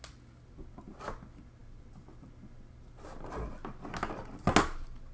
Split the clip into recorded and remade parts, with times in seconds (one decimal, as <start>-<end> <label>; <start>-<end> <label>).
0.0-5.1 recorded